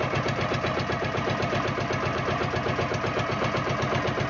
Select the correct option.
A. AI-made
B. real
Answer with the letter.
B